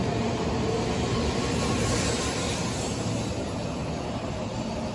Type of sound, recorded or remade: recorded